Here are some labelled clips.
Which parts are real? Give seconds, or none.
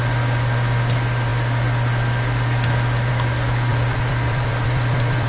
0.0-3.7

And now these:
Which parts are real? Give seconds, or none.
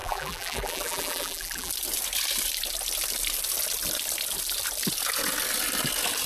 1.7-6.3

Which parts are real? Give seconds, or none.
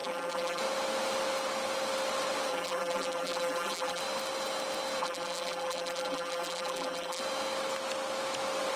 0.6-2.5; 4.0-5.0; 7.2-8.8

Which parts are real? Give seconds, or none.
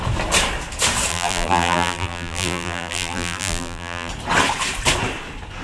0.0-1.1; 4.1-5.6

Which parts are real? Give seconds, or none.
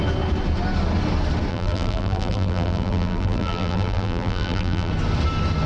0.0-1.5; 4.9-5.7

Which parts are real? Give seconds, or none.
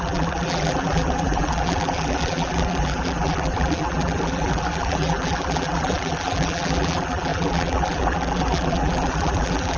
none